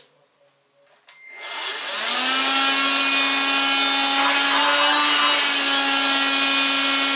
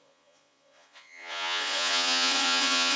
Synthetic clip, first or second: second